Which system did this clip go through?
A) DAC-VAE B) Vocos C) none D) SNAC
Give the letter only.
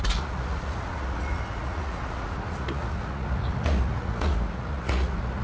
B